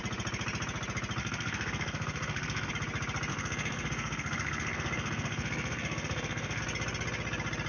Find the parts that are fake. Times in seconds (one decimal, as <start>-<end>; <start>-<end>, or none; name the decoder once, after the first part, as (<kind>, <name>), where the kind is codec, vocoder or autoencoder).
1.2-2.7 (codec, SNAC); 3.3-6.6